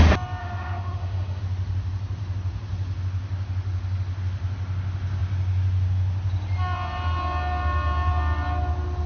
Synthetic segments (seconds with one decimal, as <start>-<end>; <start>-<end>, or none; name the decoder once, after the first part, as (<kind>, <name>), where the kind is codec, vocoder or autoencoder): 0.4-1.4 (autoencoder, DAC-VAE)